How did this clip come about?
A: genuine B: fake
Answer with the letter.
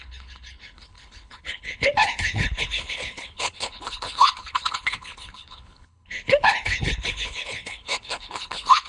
B